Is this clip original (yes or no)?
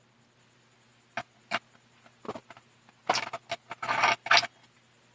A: yes